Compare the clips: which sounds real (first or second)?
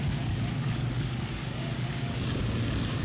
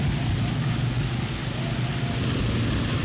second